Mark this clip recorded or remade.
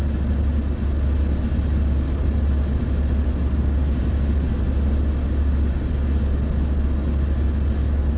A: recorded